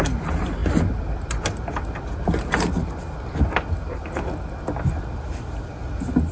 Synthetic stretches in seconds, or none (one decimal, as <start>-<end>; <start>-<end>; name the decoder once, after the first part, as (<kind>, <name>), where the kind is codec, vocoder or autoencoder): none